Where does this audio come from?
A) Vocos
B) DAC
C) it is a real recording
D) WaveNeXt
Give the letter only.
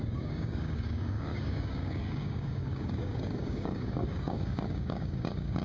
B